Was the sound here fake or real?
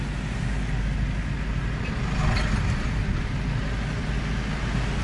real